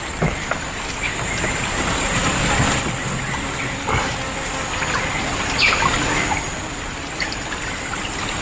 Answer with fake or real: real